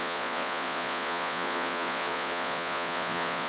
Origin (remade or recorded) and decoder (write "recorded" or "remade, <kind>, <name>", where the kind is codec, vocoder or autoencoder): remade, vocoder, Vocos